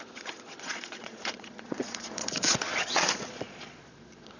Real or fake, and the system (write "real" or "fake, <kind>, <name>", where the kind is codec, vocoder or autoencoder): fake, vocoder, Vocos